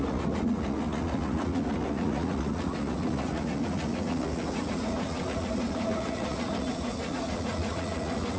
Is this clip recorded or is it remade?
remade